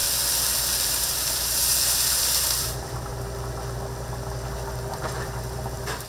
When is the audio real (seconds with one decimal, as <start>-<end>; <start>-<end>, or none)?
0.0-0.9; 3.1-4.9